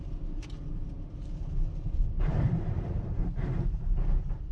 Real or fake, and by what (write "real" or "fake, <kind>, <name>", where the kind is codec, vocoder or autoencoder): fake, vocoder, BigVGAN v2